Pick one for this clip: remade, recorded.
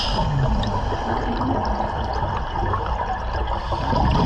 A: recorded